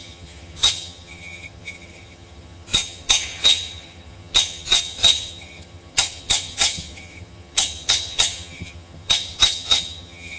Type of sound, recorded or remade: remade